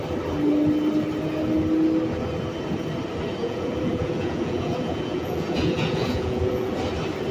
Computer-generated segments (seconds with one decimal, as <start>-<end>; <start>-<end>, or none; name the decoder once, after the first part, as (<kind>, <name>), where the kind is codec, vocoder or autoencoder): 3.4-6.7 (vocoder, Vocos)